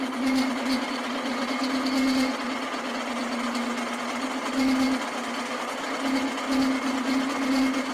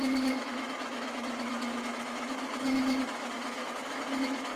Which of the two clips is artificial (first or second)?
second